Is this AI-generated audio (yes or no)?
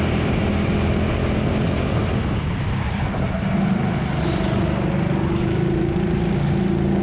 no